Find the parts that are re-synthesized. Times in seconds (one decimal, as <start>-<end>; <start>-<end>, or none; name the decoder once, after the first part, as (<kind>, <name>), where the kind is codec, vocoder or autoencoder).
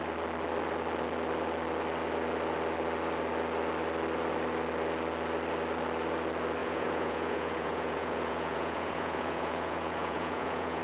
6.6-10.8 (vocoder, Vocos)